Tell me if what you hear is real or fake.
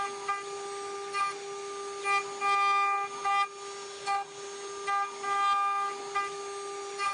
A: real